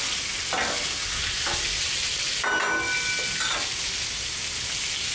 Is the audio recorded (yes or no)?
yes